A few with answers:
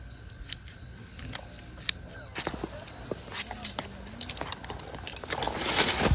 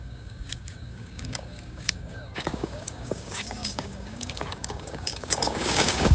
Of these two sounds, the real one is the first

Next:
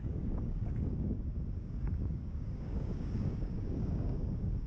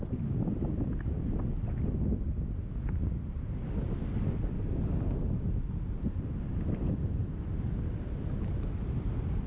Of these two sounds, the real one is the second